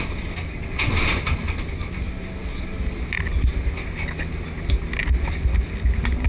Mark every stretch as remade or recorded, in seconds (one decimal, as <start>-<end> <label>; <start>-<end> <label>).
0.0-6.3 recorded